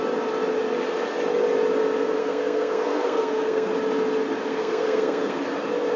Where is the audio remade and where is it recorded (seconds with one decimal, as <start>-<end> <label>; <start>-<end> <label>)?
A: 0.0-2.2 recorded; 2.2-3.7 remade; 3.7-4.5 recorded; 4.5-5.4 remade; 5.4-6.0 recorded